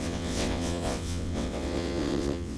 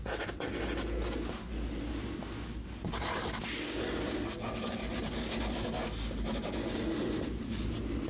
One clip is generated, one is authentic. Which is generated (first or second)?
first